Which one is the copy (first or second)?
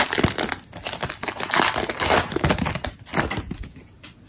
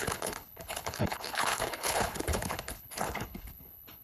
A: second